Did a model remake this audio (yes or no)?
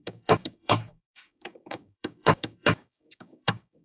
yes